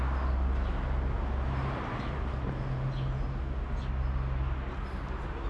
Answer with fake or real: real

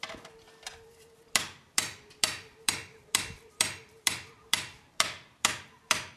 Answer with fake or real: fake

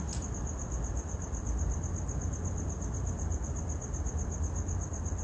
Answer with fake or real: real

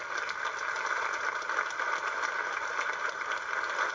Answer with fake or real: real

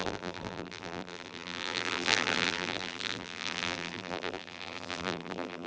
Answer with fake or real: fake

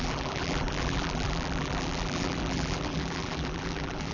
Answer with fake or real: fake